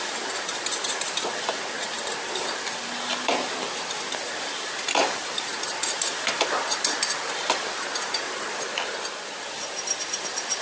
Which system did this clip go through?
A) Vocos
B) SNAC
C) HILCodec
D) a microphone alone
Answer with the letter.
D